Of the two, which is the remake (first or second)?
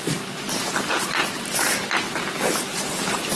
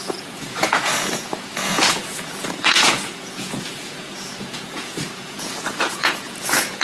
second